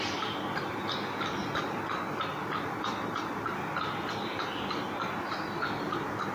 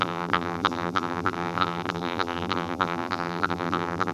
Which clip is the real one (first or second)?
first